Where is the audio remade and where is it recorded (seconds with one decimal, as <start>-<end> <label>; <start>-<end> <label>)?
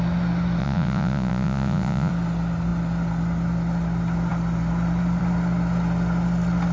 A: 0.0-0.6 recorded; 0.6-2.1 remade; 2.1-6.7 recorded